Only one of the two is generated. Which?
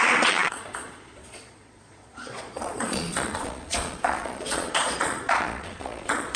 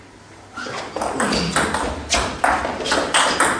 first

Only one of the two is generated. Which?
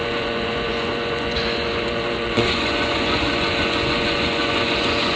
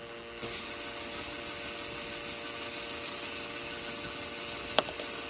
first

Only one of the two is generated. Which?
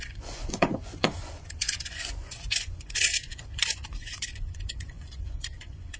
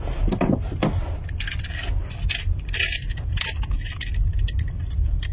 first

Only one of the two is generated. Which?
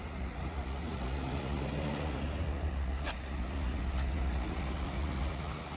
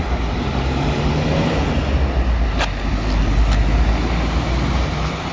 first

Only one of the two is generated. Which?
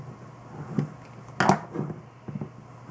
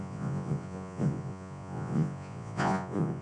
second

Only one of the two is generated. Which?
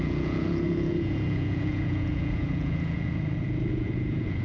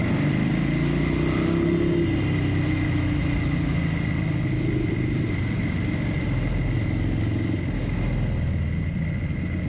first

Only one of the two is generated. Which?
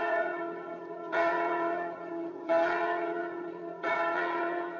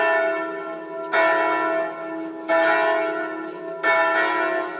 first